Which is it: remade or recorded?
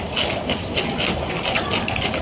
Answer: recorded